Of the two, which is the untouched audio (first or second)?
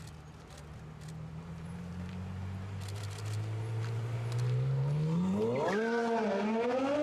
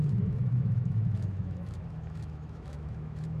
first